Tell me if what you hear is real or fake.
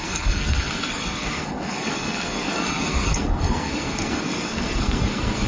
fake